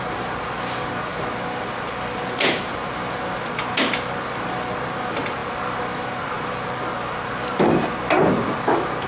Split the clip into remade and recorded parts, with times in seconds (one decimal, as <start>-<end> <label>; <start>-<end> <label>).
0.0-9.1 recorded